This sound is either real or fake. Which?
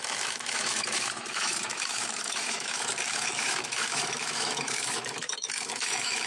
fake